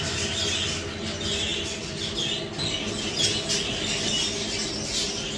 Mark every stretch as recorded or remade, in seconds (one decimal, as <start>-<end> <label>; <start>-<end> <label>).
0.0-5.4 recorded